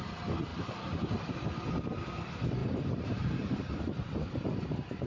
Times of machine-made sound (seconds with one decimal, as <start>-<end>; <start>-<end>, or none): 0.5-1.1; 2.6-3.7